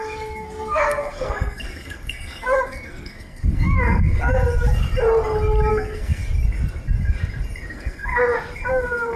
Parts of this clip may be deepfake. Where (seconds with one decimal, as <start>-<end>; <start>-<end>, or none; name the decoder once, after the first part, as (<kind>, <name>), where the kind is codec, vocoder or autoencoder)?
0.0-4.3 (codec, SNAC); 5.7-6.2; 7.7-8.2; 8.7-9.2